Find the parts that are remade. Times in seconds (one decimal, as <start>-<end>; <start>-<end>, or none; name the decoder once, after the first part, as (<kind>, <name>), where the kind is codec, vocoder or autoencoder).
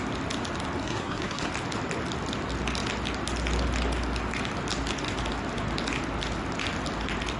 0.8-1.5 (codec, SNAC)